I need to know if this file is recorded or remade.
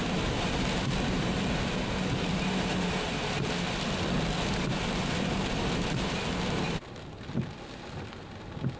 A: recorded